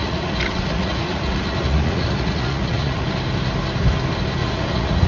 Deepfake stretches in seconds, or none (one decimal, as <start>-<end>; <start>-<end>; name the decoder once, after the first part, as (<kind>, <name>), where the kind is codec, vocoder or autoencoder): 0.0-3.1 (vocoder, Vocos); 4.4-5.1